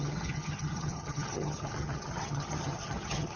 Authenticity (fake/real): fake